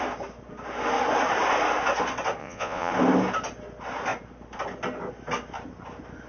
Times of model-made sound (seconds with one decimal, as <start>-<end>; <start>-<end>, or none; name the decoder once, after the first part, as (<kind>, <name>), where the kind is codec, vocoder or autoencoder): 2.4-2.9 (vocoder, Vocos)